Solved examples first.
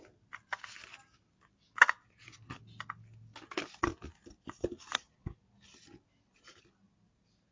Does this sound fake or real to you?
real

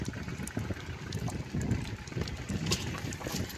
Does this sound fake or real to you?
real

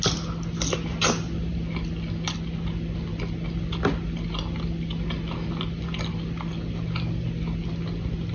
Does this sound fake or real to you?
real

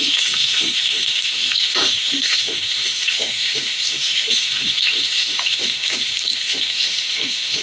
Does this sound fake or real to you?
fake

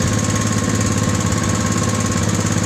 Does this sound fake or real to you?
real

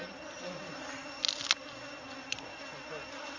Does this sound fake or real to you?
real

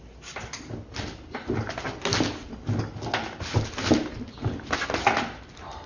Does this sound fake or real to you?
real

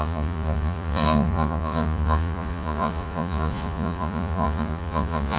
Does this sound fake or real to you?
fake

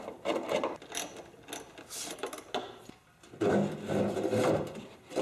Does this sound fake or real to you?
real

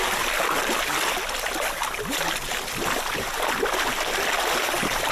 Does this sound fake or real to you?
real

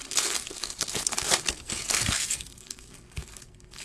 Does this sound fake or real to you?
fake